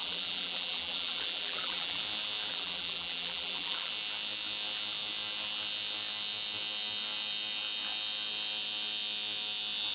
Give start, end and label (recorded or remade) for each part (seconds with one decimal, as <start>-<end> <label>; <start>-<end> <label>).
0.0-2.0 remade; 2.0-2.5 recorded; 2.5-3.9 remade; 3.9-9.9 recorded